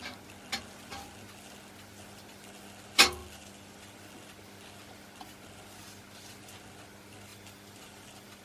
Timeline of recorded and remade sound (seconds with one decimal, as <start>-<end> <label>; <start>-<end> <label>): 0.0-3.2 recorded; 3.2-4.0 remade; 4.0-7.3 recorded; 7.3-8.4 remade